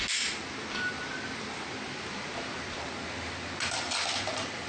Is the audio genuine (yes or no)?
yes